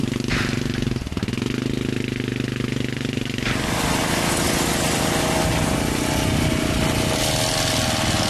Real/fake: real